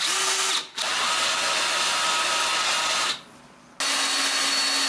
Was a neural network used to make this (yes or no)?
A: no